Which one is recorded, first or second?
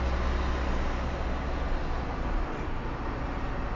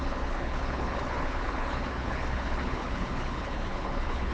first